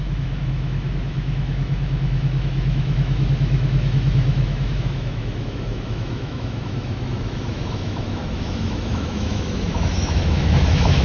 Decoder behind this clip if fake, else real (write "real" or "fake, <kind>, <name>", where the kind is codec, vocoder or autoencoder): fake, autoencoder, DAC-VAE